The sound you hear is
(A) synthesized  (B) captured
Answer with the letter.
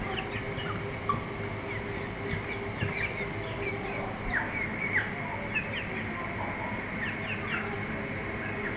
B